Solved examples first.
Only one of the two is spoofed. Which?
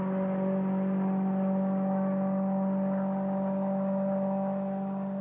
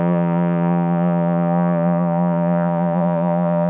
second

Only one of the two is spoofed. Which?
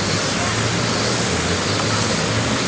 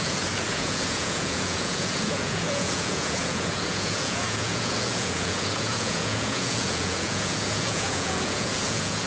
second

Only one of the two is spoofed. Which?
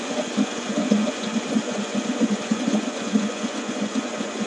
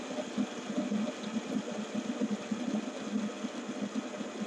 first